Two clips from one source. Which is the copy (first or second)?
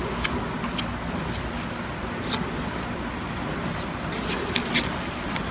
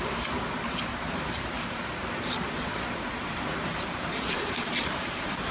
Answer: second